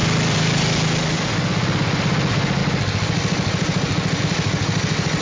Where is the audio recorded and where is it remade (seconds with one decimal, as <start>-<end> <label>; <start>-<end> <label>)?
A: 0.0-5.2 recorded